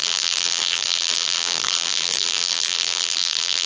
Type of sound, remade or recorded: remade